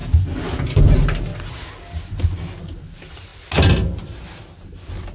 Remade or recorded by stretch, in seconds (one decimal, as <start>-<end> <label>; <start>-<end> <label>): 0.0-0.8 recorded; 0.8-1.3 remade; 1.3-2.2 recorded; 2.2-3.3 remade; 3.3-4.4 recorded; 4.4-5.1 remade